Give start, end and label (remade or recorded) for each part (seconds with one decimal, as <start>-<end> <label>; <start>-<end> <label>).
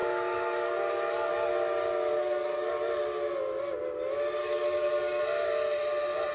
0.0-1.3 remade; 1.3-2.1 recorded; 2.1-2.7 remade; 2.7-4.4 recorded; 4.4-5.2 remade; 5.2-6.3 recorded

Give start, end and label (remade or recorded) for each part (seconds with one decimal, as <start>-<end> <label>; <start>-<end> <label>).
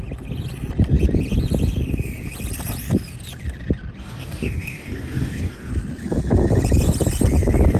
0.0-4.0 recorded; 4.0-5.7 remade; 5.7-7.8 recorded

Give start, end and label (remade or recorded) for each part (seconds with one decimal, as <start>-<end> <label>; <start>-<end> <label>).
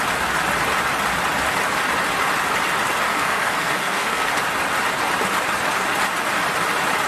0.0-3.1 recorded; 3.1-4.3 remade; 4.3-7.1 recorded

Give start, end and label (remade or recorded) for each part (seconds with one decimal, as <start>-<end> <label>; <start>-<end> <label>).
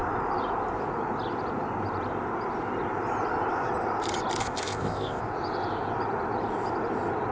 0.0-4.4 recorded; 4.4-5.2 remade; 5.2-7.3 recorded